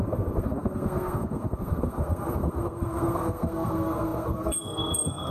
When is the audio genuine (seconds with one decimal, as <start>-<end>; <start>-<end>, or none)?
none